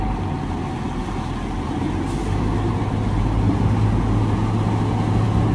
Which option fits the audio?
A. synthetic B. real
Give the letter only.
B